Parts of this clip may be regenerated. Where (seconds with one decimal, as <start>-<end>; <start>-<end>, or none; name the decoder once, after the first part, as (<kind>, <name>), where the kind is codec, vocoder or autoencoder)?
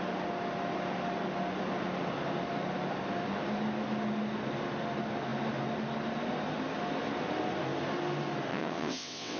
8.5-9.4 (vocoder, WaveNeXt)